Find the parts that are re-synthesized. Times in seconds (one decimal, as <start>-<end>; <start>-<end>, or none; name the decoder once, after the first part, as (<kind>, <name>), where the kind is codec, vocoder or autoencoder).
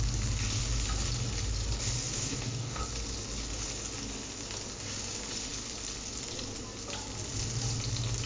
2.1-2.8 (codec, DAC)